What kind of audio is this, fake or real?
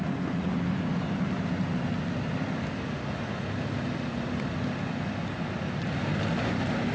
real